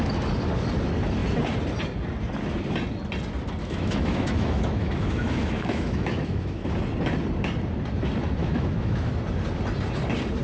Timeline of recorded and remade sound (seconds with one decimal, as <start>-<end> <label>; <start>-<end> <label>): 0.0-3.6 recorded; 3.6-6.7 remade; 6.7-8.4 recorded; 8.4-9.1 remade; 9.1-10.4 recorded